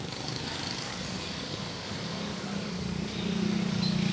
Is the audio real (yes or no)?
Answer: no